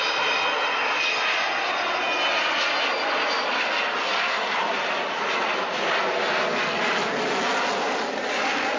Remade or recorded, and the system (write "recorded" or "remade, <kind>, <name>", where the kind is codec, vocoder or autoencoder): recorded